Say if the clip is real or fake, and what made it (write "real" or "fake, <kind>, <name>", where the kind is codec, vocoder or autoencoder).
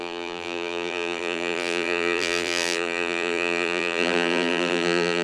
fake, vocoder, BigVGAN v2